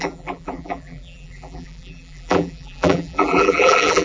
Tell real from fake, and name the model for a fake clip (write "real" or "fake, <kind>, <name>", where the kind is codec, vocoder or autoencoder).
fake, vocoder, BigVGAN v2